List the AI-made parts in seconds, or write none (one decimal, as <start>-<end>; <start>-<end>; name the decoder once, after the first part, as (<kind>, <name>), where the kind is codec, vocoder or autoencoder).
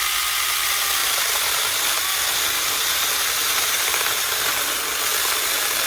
1.0-1.6 (vocoder, BigVGAN v2); 3.4-4.5